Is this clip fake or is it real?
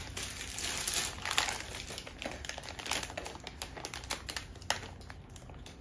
real